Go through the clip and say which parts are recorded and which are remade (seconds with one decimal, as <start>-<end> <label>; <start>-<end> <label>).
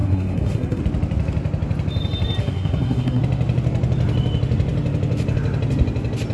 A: 0.0-0.8 remade; 0.8-2.4 recorded; 2.4-3.2 remade; 3.2-6.3 recorded